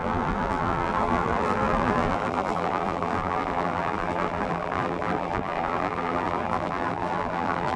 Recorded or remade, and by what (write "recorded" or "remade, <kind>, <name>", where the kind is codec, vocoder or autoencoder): remade, vocoder, BigVGAN v2